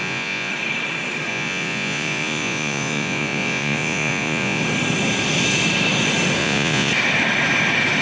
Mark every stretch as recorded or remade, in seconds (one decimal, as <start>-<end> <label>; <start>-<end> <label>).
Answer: 0.0-0.5 remade; 0.5-1.3 recorded; 1.3-4.6 remade; 4.6-6.4 recorded; 6.4-6.9 remade; 6.9-8.0 recorded